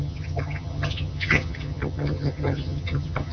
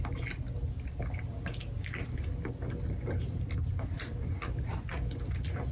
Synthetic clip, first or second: first